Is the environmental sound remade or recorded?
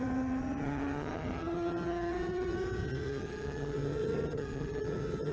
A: remade